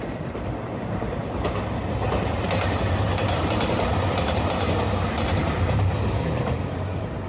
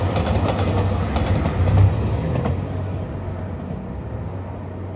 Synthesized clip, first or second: first